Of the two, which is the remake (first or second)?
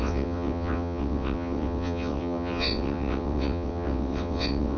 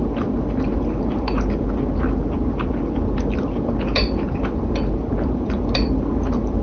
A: first